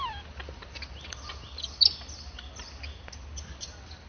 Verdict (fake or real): real